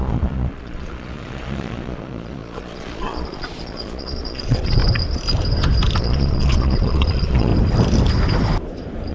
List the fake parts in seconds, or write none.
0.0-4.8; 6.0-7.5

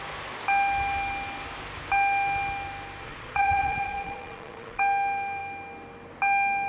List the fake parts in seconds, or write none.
3.0-4.8

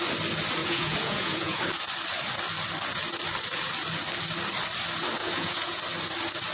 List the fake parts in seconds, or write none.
0.6-1.6; 5.2-5.8

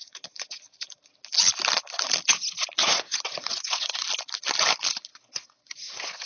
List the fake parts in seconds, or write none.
0.0-0.6; 2.8-4.0; 5.1-6.3

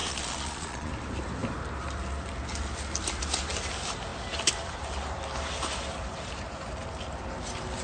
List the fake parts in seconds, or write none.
0.0-0.9

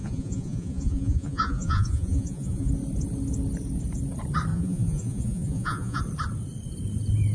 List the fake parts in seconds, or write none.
0.0-2.7; 4.5-6.0

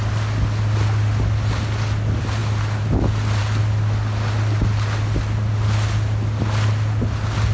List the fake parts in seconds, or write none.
none